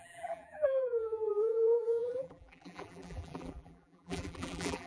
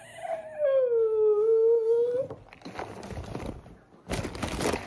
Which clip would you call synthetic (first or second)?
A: first